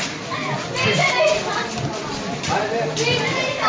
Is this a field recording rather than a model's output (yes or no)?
yes